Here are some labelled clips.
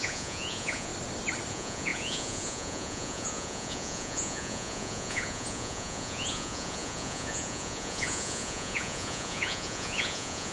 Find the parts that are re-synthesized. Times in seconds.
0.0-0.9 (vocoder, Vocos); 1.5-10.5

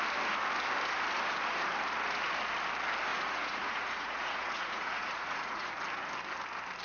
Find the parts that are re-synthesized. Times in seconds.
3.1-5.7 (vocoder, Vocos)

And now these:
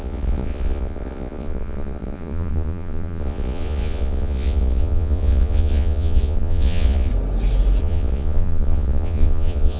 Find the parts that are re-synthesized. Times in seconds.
0.0-7.1 (vocoder, Vocos); 7.8-9.8

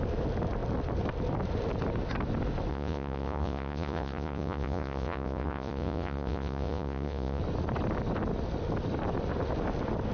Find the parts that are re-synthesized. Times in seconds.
2.7-7.4 (vocoder, Vocos)

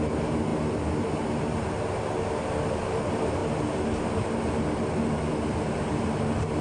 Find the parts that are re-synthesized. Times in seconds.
none

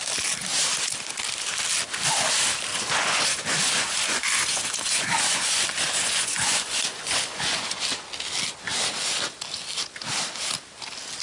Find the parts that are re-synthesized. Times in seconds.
2.7-7.8 (vocoder, Vocos)

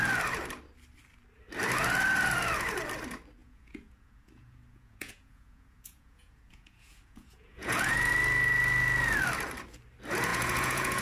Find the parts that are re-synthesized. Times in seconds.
3.4-8.1 (vocoder, Vocos); 10.3-11.0